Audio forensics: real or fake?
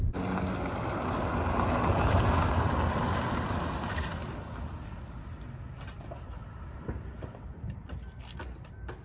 real